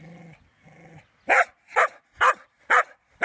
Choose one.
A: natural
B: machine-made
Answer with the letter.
A